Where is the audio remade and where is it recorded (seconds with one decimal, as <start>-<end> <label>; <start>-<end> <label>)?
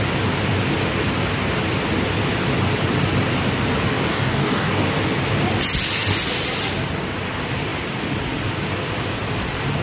0.0-4.1 recorded; 4.1-4.7 remade; 4.7-9.8 recorded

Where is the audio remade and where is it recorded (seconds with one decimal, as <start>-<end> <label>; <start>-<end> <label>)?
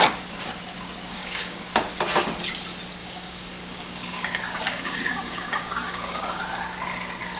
0.0-1.2 recorded; 1.2-1.7 remade; 1.7-3.0 recorded; 3.0-6.4 remade; 6.4-7.4 recorded